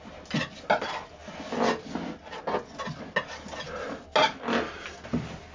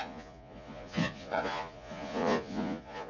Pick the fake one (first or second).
second